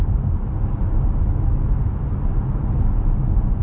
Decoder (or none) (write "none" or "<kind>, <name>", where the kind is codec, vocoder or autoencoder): none